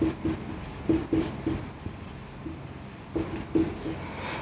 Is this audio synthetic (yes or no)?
no